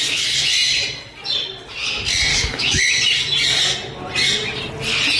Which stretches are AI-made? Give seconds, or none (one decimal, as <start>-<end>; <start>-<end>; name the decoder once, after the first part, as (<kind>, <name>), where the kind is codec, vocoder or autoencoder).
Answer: 2.3-2.8 (codec, DAC)